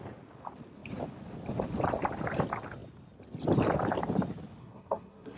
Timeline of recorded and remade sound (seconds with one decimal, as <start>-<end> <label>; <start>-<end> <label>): 0.0-4.6 recorded; 4.6-5.4 remade